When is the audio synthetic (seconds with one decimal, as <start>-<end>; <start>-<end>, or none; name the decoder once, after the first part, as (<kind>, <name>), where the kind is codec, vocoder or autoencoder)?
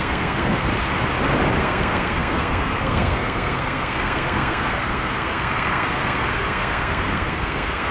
0.0-0.7 (codec, SNAC); 1.6-7.9